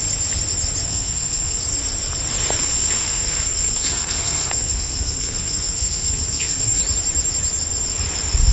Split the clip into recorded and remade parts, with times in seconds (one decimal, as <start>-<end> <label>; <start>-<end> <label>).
0.0-0.9 recorded; 0.9-1.6 remade; 1.6-2.6 recorded; 2.6-6.8 remade; 6.8-8.5 recorded